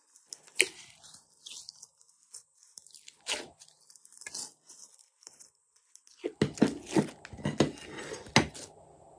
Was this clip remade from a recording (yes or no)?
no